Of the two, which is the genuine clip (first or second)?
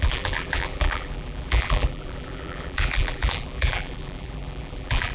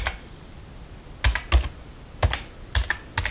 second